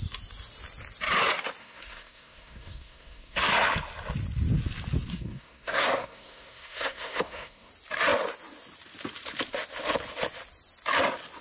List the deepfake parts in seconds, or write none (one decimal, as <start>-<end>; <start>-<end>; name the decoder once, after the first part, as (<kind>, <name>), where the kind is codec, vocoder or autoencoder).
1.6-3.5 (codec, SNAC); 5.1-7.7